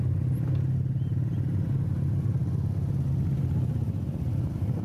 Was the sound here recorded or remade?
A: recorded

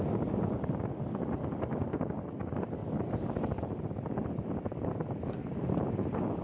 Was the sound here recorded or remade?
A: recorded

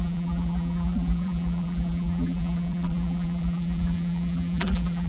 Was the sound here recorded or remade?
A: remade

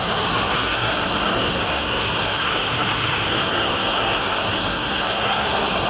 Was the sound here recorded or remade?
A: remade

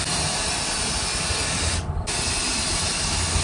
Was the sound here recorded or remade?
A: recorded